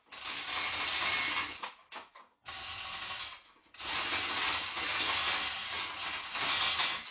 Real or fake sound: real